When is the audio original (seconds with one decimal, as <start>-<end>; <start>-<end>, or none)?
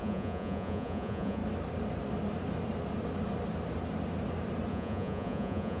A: 1.4-4.7